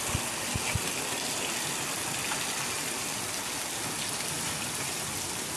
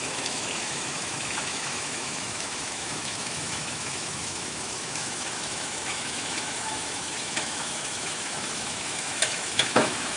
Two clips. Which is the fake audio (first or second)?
second